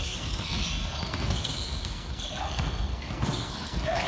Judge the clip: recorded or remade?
remade